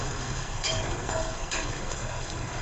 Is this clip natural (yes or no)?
no